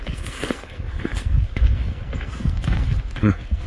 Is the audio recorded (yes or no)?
no